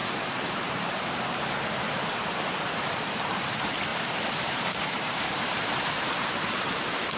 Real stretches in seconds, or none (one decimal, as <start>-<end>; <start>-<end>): 1.7-3.9; 6.4-7.2